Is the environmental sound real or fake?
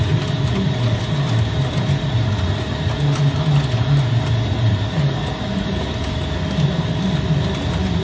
real